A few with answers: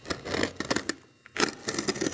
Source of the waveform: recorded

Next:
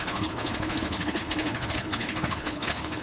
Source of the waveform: remade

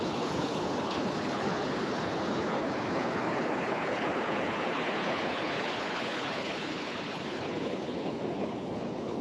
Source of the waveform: remade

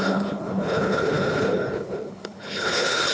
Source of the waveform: remade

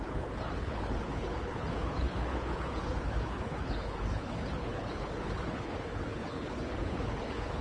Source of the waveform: remade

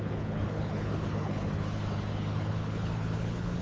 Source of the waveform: remade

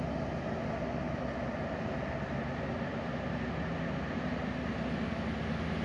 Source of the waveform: recorded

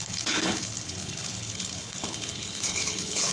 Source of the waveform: remade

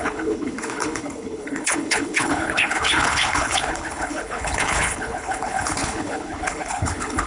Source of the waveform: remade